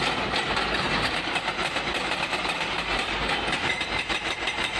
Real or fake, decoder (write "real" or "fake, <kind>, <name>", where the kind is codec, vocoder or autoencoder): fake, vocoder, BigVGAN v2